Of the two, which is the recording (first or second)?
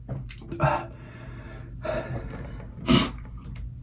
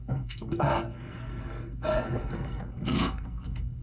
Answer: first